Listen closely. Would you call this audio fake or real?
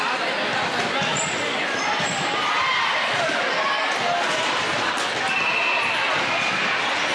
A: real